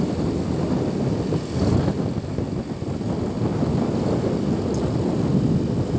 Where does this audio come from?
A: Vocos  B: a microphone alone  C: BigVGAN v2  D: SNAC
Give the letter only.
B